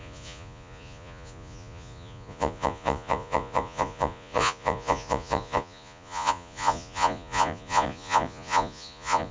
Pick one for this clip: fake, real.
fake